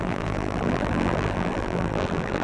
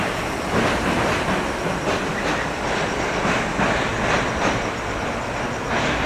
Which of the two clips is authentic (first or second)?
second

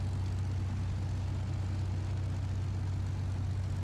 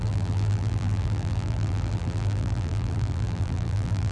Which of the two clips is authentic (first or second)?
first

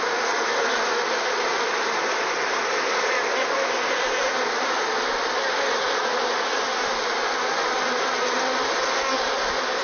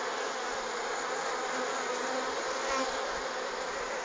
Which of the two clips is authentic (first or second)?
second